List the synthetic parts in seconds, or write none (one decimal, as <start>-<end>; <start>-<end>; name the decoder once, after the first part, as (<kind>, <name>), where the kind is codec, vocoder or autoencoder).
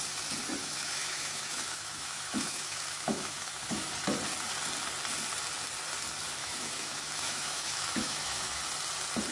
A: 0.6-3.9 (autoencoder, DAC-VAE); 6.4-8.6